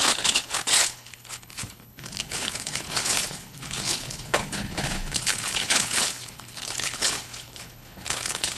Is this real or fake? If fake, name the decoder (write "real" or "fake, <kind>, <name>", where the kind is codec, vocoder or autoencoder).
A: fake, codec, HILCodec